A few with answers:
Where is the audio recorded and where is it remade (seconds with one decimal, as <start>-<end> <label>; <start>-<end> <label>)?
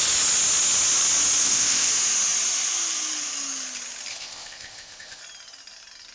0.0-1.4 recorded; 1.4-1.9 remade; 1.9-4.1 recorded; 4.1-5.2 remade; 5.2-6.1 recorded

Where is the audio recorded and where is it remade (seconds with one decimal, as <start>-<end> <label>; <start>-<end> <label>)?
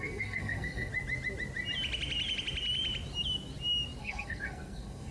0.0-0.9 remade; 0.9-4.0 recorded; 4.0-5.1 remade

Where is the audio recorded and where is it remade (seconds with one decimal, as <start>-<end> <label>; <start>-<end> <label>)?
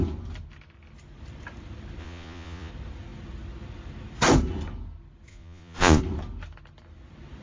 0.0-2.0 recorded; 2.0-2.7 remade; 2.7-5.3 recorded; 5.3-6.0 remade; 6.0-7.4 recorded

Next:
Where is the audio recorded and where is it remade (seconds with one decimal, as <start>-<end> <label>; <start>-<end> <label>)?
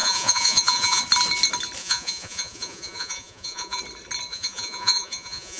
0.0-1.0 remade; 1.0-1.8 recorded; 1.8-3.8 remade; 3.8-4.3 recorded; 4.3-5.6 remade